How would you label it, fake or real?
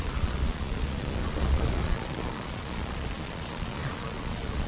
fake